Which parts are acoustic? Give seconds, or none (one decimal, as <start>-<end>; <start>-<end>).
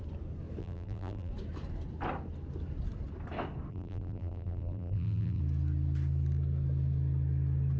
0.0-0.6; 1.3-3.7; 5.4-7.8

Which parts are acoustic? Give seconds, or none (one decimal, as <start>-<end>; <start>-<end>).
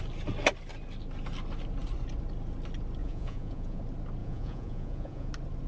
0.0-3.0; 3.8-4.2; 5.3-5.7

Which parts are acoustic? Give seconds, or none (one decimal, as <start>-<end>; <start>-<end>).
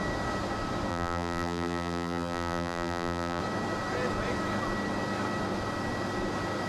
0.0-0.9; 3.4-6.7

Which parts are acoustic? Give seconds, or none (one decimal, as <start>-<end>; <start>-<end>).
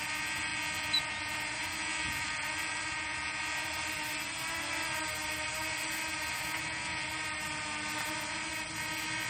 0.0-9.3